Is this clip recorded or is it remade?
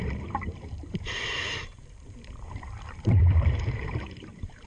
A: remade